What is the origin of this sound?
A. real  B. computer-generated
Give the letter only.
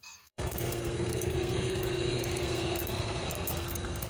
B